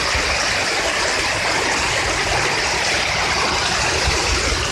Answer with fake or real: real